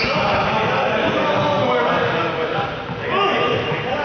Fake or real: real